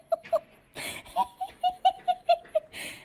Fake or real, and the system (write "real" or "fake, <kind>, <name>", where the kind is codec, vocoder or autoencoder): real